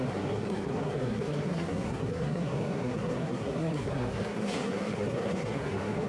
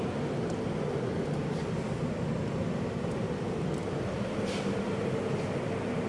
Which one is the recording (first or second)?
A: second